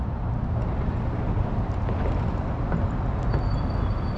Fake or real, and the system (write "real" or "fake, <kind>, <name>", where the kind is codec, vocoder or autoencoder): real